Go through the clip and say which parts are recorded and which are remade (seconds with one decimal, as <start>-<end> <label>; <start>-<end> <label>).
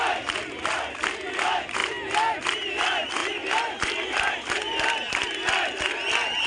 0.0-3.2 recorded; 3.2-3.8 remade; 3.8-6.5 recorded